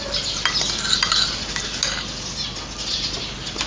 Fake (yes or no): no